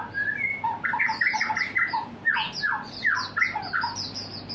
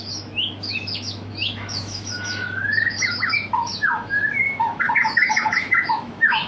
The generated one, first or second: second